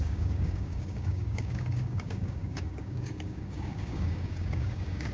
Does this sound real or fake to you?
fake